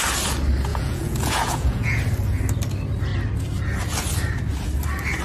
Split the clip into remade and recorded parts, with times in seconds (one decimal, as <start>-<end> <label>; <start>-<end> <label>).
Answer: 0.0-0.7 recorded; 0.7-2.0 remade; 2.0-5.2 recorded